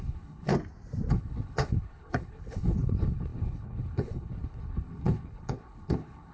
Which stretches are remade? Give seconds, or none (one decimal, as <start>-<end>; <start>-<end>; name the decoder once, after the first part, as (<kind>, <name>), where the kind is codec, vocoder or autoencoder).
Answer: 0.0-0.5 (codec, HILCodec); 1.1-6.3